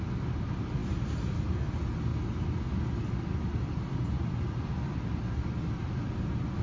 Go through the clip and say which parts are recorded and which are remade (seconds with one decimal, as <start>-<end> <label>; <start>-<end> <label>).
0.0-6.6 recorded